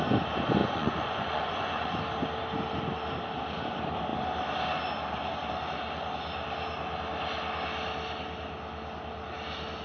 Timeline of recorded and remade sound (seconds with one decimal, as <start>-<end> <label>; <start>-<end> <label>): 0.0-0.6 recorded; 0.6-2.0 remade; 2.0-9.8 recorded